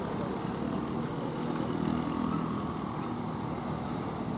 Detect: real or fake real